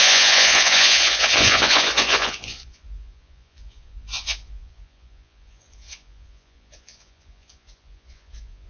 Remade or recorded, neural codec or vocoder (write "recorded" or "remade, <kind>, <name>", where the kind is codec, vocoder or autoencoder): remade, vocoder, Vocos